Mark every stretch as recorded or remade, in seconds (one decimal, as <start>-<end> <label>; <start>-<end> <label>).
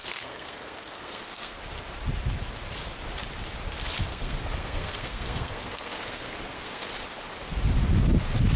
0.0-1.6 remade; 1.6-4.1 recorded; 4.1-6.9 remade; 6.9-8.6 recorded